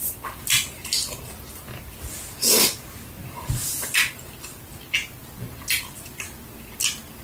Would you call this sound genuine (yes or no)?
yes